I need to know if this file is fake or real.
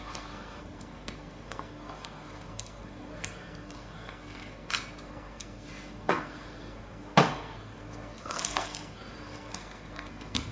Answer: fake